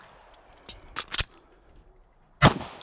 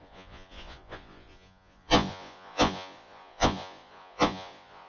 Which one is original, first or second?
first